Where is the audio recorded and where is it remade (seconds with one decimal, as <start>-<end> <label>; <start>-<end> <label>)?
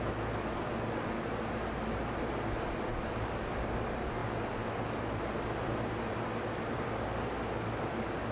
0.0-8.3 recorded